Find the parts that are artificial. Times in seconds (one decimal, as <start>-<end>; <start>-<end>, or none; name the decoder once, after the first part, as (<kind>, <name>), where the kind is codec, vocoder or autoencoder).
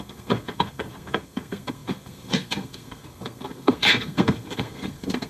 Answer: 0.0-5.3 (codec, SNAC)